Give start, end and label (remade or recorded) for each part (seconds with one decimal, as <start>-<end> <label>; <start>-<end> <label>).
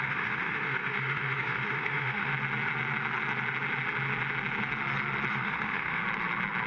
0.0-2.3 remade; 2.3-5.3 recorded; 5.3-6.0 remade; 6.0-6.7 recorded